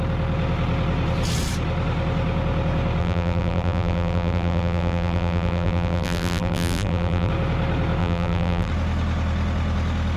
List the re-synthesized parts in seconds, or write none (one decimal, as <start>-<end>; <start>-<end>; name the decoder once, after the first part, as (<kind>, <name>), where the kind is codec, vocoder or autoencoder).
3.0-7.3 (vocoder, BigVGAN v2); 8.0-8.7